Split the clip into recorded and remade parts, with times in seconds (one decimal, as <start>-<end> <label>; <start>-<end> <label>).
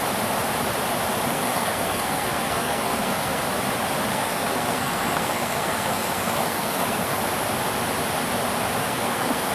0.0-1.3 recorded; 1.3-3.4 remade; 3.4-4.1 recorded; 4.1-7.2 remade; 7.2-8.8 recorded; 8.8-9.5 remade